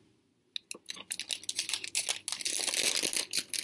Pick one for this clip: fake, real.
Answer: real